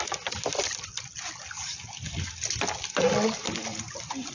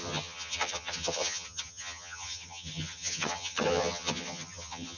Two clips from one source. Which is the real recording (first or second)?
first